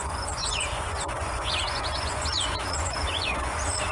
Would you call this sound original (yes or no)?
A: no